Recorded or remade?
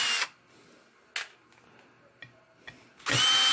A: recorded